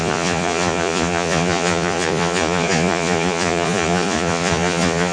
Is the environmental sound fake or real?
fake